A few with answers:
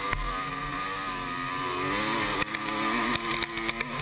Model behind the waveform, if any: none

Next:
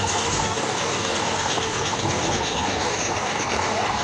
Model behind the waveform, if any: codec, DAC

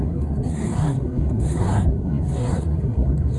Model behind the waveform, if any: codec, SNAC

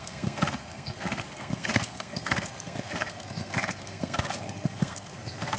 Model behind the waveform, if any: codec, SNAC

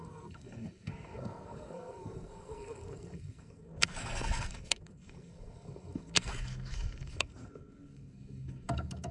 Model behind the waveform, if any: codec, SNAC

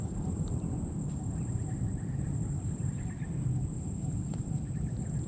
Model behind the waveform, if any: none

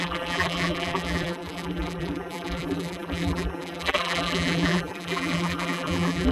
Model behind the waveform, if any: vocoder, BigVGAN v2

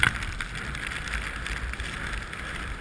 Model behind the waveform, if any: none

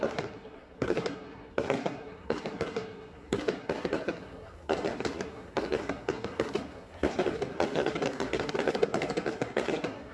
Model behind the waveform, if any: codec, SNAC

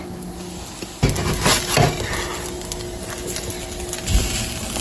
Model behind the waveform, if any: none